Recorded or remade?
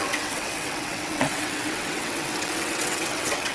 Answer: remade